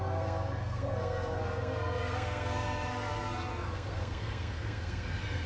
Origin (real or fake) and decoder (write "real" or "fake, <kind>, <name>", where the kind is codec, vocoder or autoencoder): fake, codec, SNAC